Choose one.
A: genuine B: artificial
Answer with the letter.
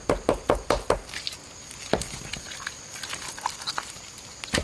A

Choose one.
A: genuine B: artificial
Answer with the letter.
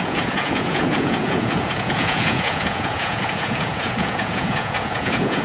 B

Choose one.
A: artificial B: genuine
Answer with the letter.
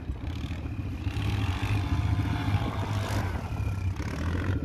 B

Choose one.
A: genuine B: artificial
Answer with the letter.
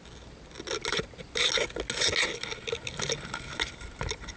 A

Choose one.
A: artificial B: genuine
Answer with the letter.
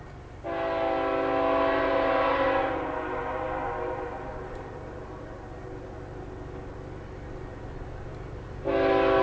B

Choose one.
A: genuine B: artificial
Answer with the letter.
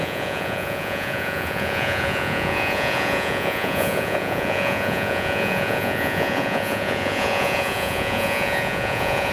B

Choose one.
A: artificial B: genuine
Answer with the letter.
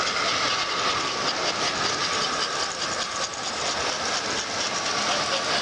B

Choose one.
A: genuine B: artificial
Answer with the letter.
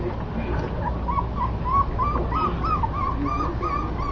A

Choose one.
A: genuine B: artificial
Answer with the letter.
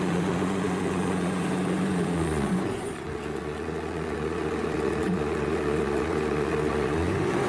B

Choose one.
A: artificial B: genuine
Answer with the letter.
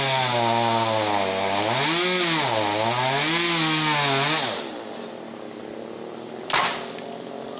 B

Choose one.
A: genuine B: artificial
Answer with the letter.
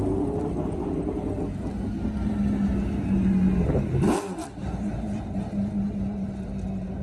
A